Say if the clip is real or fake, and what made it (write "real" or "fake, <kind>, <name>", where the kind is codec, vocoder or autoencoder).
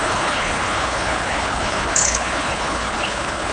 fake, codec, HILCodec